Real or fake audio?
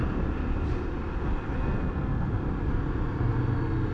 real